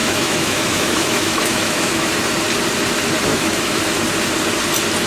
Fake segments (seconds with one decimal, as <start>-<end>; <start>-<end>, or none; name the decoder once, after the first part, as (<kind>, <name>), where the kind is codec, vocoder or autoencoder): 0.0-2.1 (autoencoder, DAC-VAE); 3.3-3.8